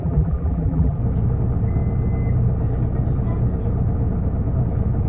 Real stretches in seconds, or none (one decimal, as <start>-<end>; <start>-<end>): 1.0-5.1